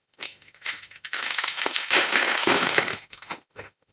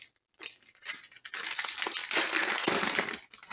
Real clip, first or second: second